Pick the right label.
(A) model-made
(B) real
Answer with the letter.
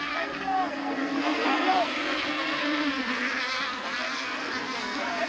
A